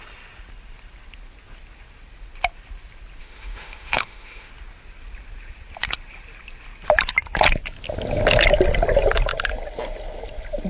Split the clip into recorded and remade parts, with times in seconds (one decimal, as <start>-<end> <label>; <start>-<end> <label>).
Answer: 0.0-3.2 recorded; 3.2-4.5 remade; 4.5-10.7 recorded